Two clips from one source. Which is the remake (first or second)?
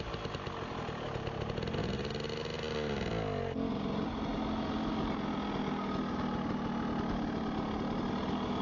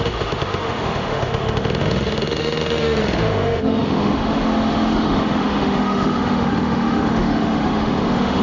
second